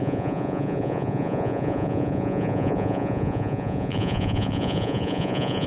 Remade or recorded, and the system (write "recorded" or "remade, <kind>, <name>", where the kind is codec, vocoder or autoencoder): remade, vocoder, Vocos